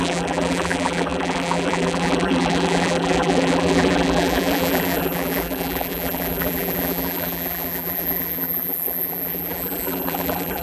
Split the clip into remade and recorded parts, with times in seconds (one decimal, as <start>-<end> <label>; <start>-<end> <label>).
0.0-10.6 remade